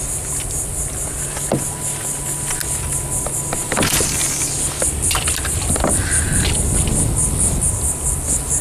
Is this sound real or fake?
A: real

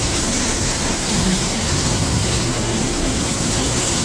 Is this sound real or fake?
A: fake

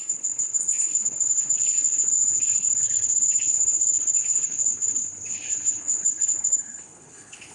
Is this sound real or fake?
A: fake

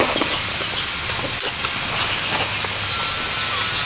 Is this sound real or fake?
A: real